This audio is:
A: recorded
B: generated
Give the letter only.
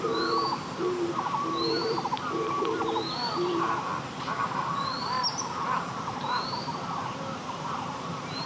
B